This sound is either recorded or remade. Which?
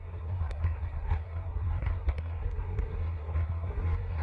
remade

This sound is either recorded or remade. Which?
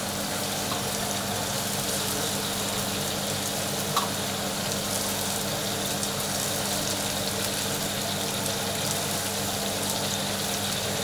recorded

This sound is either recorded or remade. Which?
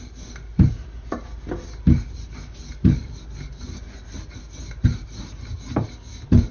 recorded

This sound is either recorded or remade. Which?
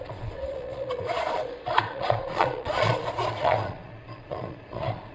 remade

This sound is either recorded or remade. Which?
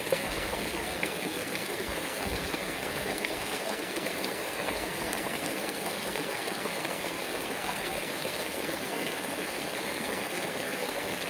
remade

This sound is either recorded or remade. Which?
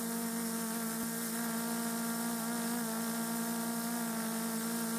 recorded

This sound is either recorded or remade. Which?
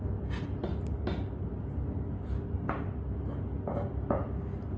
recorded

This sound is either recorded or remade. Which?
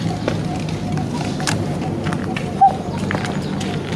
recorded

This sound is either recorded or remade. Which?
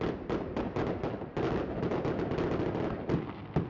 recorded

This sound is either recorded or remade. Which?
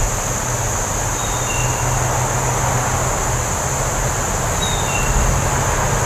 recorded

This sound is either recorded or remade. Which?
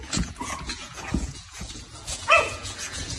remade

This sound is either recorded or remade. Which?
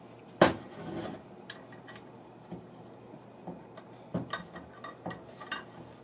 recorded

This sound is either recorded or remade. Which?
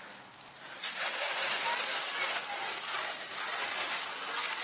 recorded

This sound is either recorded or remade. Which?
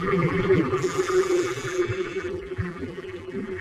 remade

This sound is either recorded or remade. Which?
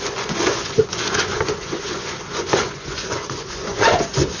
remade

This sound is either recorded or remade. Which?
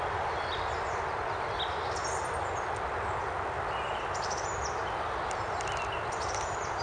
recorded